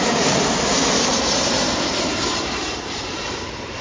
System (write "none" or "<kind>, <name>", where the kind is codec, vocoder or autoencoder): vocoder, BigVGAN v2